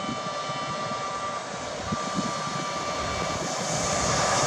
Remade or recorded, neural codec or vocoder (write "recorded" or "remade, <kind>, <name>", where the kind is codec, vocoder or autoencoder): recorded